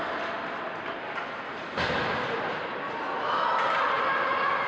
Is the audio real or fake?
real